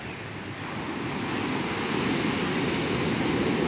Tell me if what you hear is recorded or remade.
recorded